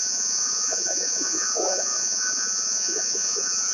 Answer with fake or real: fake